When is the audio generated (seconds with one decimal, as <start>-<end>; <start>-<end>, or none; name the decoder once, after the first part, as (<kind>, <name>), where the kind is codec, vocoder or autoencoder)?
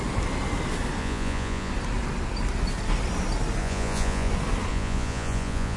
1.0-1.7 (vocoder, Vocos); 3.6-4.3; 4.7-5.8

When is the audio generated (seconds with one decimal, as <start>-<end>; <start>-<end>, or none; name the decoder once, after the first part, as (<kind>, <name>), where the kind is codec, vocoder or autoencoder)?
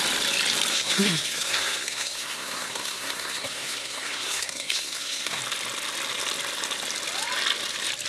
0.7-5.4 (codec, SNAC)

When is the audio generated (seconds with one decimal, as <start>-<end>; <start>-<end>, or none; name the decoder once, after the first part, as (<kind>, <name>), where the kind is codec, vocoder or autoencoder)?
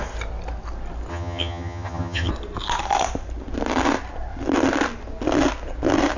1.1-2.3 (vocoder, HiFi-GAN)